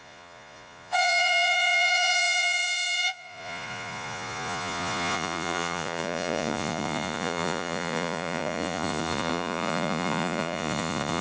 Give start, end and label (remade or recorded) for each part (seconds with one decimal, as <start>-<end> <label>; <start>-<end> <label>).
0.0-11.2 remade